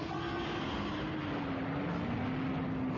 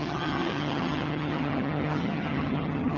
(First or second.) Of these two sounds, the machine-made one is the second